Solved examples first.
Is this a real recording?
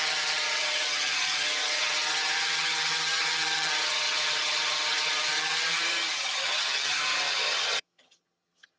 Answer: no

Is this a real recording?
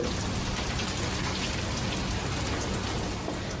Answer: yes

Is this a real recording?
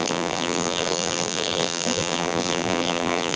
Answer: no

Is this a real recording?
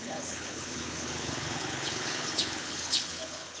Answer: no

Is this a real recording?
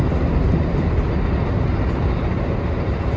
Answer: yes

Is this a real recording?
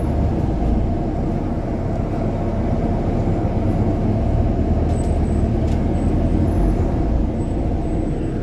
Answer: yes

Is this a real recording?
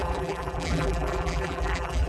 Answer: no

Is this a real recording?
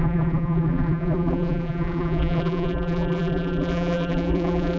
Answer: no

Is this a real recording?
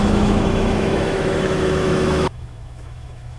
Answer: no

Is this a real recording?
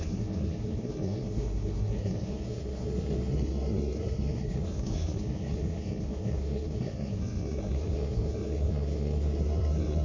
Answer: no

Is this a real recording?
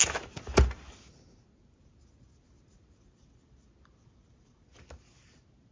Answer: yes